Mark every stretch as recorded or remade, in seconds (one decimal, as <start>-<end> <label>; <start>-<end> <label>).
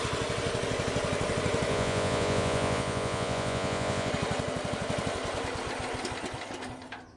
0.0-1.7 recorded; 1.7-4.1 remade; 4.1-7.2 recorded